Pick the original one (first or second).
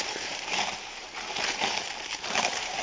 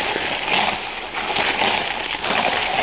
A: second